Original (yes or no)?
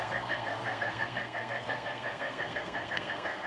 no